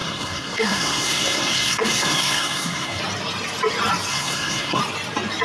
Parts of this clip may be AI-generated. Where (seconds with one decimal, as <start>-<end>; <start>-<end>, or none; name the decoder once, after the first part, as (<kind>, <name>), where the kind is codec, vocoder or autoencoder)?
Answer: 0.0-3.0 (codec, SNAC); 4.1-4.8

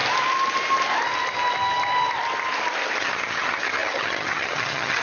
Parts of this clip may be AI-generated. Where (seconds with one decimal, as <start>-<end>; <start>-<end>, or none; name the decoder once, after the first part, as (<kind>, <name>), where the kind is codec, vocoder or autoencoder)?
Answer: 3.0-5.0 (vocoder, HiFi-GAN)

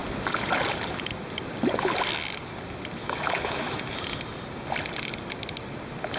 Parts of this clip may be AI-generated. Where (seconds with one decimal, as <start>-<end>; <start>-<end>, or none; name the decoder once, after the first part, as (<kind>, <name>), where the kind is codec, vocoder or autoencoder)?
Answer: 3.0-3.9 (autoencoder, DAC-VAE)

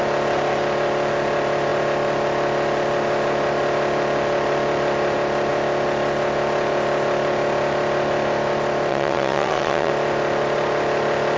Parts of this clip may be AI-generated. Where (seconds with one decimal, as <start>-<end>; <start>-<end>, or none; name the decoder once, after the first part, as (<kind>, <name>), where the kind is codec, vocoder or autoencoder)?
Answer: 8.9-9.9 (vocoder, WaveNeXt)

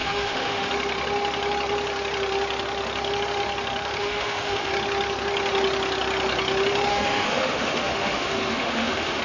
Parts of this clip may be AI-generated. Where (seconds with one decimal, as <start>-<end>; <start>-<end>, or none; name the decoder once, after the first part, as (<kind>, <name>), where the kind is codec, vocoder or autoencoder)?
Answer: 0.0-0.7 (autoencoder, DAC-VAE); 4.0-4.7; 6.9-9.2

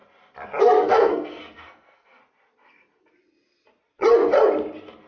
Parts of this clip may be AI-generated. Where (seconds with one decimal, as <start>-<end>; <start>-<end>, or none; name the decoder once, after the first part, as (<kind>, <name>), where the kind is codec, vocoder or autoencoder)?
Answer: 0.6-2.2 (codec, SNAC)

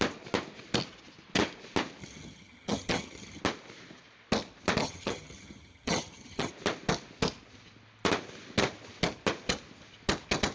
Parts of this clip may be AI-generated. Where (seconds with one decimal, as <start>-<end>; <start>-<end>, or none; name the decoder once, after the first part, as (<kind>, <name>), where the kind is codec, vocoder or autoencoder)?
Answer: 2.0-3.4 (vocoder, HiFi-GAN); 4.8-6.5

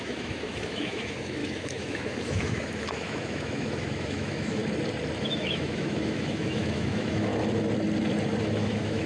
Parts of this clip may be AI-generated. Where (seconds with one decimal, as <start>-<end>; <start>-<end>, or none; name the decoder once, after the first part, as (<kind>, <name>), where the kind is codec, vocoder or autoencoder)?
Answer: 0.0-4.6 (autoencoder, DAC-VAE); 5.2-7.3; 8.4-9.1